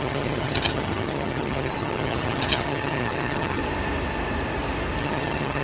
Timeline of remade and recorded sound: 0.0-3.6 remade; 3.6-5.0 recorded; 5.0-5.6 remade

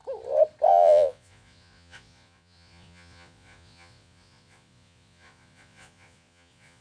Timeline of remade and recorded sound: 0.0-0.7 recorded; 0.7-6.8 remade

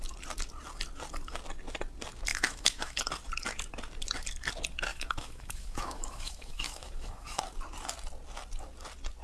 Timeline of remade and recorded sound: 0.0-2.3 recorded; 2.3-3.0 remade; 3.0-4.9 recorded; 4.9-7.4 remade; 7.4-9.2 recorded

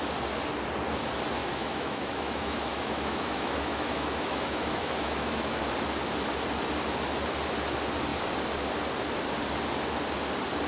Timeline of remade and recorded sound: 0.0-1.4 recorded; 1.4-5.6 remade; 5.6-10.7 recorded

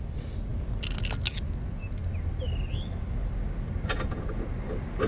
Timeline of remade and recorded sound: 0.0-5.1 recorded

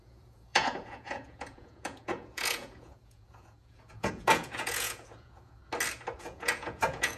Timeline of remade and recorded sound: 0.0-5.6 remade; 5.6-6.2 recorded; 6.2-7.2 remade

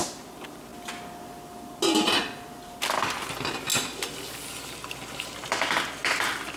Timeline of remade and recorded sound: 0.0-6.6 recorded